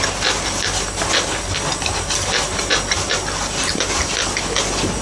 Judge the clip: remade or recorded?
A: recorded